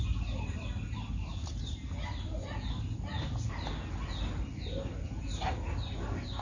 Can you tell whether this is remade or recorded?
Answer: recorded